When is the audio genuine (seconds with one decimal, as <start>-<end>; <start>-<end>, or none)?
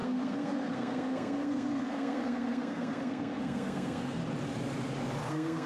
4.2-5.3